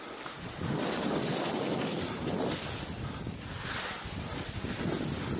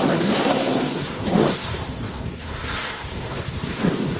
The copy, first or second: second